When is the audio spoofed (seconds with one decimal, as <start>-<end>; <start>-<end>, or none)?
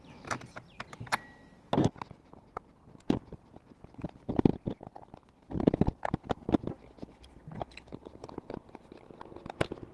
none